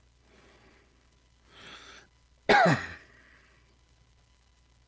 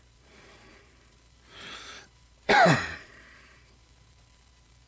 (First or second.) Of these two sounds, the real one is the first